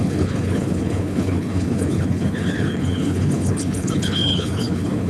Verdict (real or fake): fake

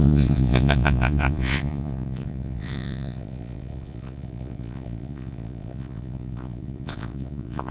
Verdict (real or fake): fake